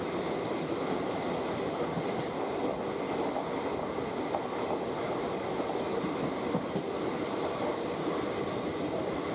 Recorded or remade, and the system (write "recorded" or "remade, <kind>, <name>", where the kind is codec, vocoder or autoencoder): recorded